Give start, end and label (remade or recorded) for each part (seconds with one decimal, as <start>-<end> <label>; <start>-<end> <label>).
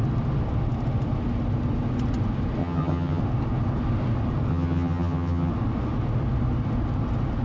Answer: 0.0-2.6 recorded; 2.6-3.2 remade; 3.2-4.5 recorded; 4.5-5.5 remade; 5.5-7.4 recorded